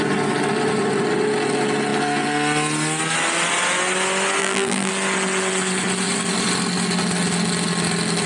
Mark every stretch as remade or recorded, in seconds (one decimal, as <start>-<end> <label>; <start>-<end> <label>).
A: 0.0-4.4 recorded; 4.4-4.9 remade; 4.9-8.3 recorded